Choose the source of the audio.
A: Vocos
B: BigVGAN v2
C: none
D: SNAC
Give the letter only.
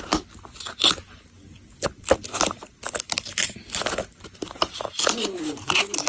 C